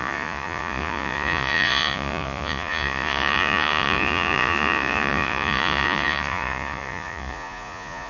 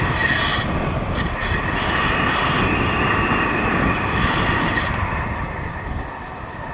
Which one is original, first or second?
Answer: second